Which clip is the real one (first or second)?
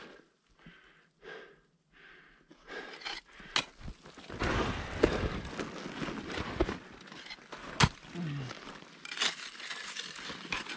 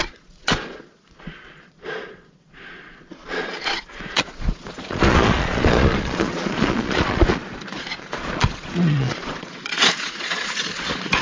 first